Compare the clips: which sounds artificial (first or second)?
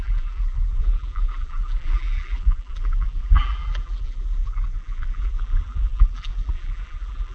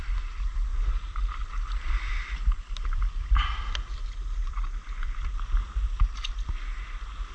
first